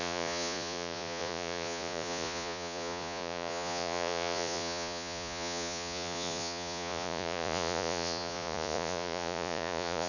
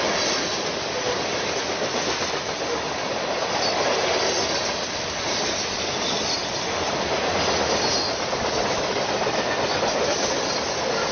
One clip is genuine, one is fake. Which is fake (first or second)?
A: first